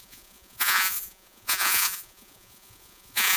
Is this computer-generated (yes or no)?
yes